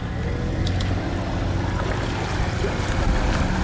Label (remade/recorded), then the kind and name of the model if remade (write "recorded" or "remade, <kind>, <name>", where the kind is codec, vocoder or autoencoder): recorded